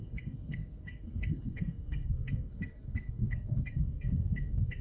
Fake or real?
fake